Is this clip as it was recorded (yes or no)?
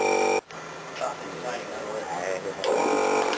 yes